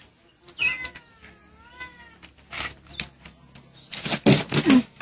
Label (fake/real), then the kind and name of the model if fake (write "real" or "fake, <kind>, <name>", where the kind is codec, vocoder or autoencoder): real